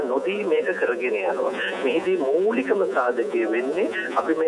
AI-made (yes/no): yes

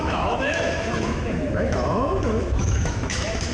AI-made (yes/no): yes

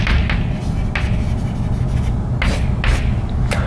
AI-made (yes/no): no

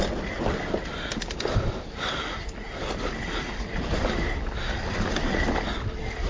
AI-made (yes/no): no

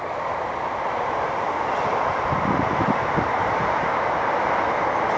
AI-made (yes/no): no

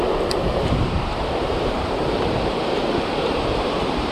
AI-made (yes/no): yes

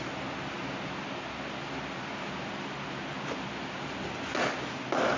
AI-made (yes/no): no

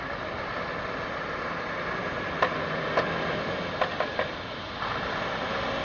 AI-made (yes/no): no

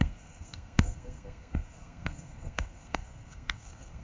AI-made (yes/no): yes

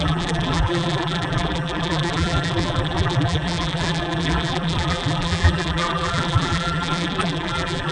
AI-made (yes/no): yes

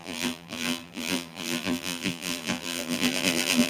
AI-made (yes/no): yes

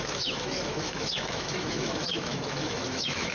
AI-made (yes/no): yes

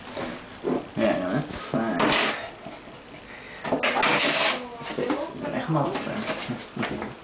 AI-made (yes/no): no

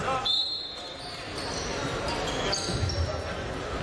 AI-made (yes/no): no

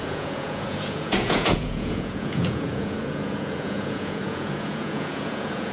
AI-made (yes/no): yes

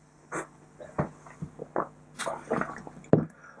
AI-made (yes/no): no